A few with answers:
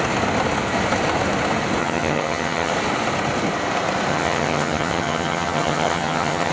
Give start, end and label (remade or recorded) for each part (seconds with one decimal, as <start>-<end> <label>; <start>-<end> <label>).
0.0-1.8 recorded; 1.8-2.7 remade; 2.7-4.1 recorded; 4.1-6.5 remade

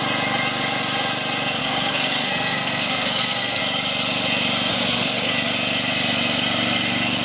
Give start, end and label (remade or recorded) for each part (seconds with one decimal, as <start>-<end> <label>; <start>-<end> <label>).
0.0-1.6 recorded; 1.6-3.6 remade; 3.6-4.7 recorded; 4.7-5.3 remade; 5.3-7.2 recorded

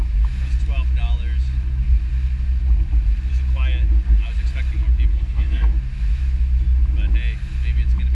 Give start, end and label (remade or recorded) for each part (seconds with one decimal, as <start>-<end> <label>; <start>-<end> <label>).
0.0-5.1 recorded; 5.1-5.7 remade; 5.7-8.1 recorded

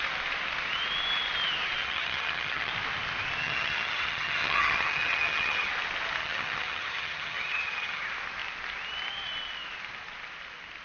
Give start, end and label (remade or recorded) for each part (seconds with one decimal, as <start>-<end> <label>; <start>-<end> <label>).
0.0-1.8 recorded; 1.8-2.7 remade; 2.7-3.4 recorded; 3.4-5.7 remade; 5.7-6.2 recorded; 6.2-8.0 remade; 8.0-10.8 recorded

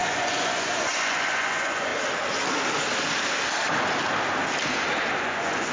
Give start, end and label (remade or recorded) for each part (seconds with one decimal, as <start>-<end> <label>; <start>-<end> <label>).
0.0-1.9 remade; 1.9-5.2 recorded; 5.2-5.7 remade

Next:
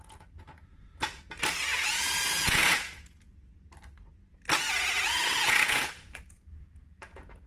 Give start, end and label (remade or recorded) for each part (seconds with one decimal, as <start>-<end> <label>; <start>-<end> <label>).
0.0-3.5 remade; 3.5-4.8 recorded; 4.8-7.5 remade

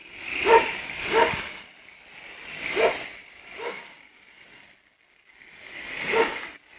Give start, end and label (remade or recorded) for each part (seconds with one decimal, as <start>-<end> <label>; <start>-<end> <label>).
0.0-2.0 remade; 2.0-3.2 recorded; 3.2-4.6 remade; 4.6-6.8 recorded

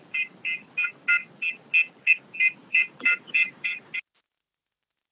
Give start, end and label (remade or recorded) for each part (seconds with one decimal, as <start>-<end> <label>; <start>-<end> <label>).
0.0-2.6 recorded; 2.6-3.9 remade; 3.9-5.1 recorded